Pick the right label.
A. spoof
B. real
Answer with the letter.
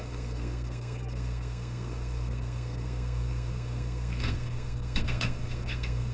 A